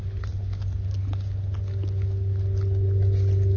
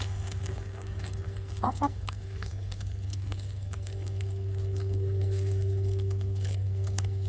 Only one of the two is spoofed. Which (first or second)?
second